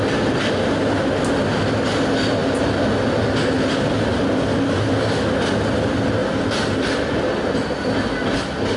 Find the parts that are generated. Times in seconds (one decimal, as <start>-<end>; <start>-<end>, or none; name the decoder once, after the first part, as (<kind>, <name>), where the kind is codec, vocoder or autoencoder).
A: none